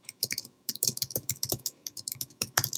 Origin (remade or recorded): remade